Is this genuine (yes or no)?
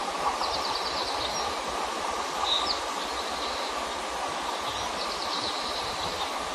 yes